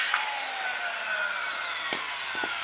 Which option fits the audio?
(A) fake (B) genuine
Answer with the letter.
B